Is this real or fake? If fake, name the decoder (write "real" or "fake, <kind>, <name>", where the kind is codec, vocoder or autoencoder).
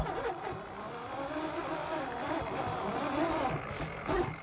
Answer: real